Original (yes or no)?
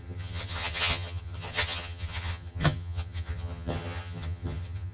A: no